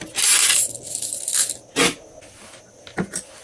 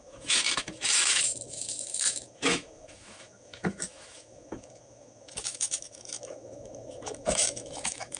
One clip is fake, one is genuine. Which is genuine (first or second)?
first